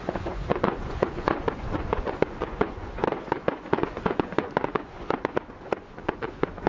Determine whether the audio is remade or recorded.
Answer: remade